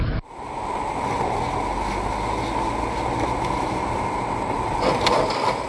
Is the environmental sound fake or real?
real